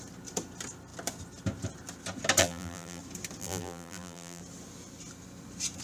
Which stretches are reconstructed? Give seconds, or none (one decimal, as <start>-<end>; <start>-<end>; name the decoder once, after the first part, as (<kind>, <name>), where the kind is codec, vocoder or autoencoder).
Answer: 2.4-3.0 (vocoder, BigVGAN v2); 3.4-4.4